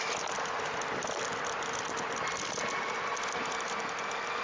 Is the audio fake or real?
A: real